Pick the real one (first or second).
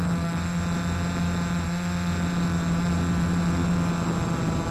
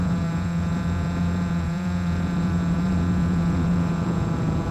first